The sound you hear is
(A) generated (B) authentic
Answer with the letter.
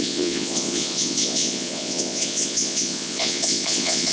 A